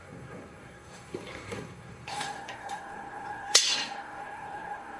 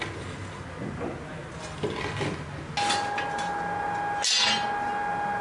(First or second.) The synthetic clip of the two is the first